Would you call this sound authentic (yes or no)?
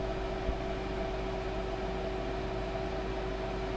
yes